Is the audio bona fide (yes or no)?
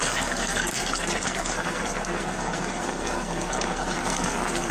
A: no